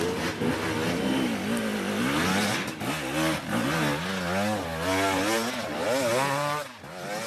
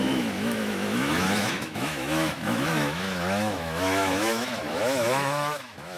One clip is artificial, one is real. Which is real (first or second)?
first